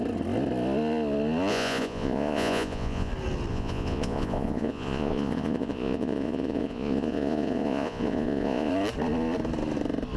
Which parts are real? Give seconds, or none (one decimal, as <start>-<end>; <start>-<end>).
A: 0.0-1.5; 3.1-3.5; 8.7-10.2